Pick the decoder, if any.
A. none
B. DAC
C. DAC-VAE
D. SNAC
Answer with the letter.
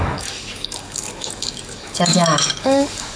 B